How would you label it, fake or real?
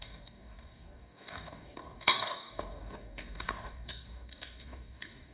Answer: fake